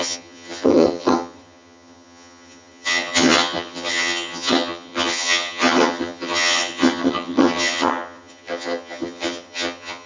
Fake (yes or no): yes